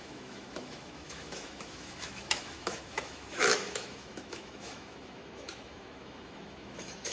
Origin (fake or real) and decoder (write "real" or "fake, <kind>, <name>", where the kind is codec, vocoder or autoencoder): fake, autoencoder, DAC-VAE